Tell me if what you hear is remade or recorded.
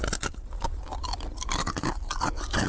recorded